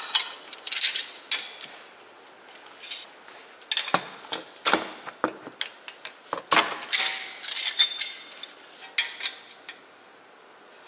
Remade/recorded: recorded